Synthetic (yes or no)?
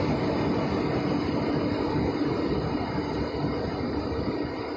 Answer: no